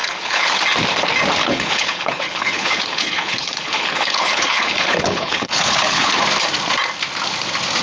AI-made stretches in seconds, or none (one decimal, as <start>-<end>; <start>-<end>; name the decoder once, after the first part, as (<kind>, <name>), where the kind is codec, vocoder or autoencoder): 0.0-0.6 (codec, HILCodec); 1.4-6.1